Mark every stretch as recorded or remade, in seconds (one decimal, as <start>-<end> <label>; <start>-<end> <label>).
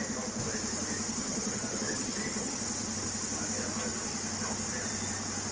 0.0-1.2 recorded; 1.2-2.6 remade; 2.6-5.5 recorded